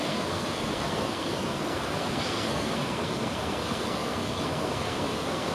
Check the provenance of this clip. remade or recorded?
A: remade